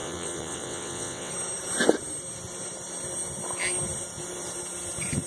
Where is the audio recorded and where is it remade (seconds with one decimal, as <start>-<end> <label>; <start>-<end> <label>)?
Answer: 0.0-1.3 remade; 1.3-5.3 recorded